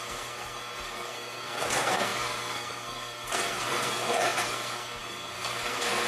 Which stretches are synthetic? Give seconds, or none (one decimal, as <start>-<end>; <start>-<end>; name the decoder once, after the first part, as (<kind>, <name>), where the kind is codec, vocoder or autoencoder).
0.0-6.1 (codec, SNAC)